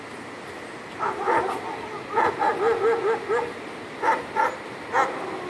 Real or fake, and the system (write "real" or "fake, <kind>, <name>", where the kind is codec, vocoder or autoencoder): real